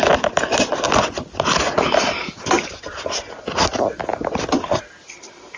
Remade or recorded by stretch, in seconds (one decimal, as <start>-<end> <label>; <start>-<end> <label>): 0.0-5.6 recorded